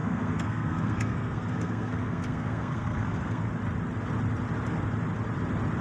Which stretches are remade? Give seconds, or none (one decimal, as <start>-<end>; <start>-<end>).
0.0-3.5